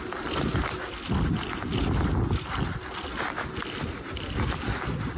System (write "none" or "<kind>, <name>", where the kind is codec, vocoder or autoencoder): none